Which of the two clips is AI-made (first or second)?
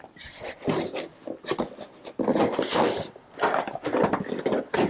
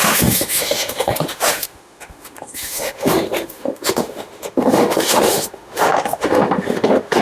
second